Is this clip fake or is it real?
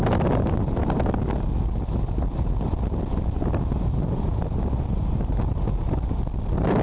real